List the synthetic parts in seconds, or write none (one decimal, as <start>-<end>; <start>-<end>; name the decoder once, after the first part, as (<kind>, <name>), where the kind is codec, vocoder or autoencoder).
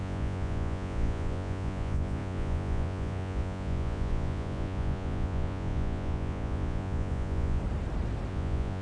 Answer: 0.0-7.6 (vocoder, Vocos); 8.3-8.8